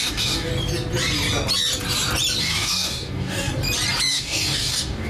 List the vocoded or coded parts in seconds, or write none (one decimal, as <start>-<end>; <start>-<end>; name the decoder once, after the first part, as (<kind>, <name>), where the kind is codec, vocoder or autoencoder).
0.0-0.5 (codec, DAC); 2.4-3.5; 4.1-5.1